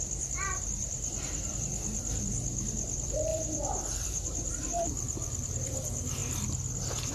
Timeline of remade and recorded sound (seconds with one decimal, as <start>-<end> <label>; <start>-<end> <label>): 0.0-6.2 remade; 6.2-7.1 recorded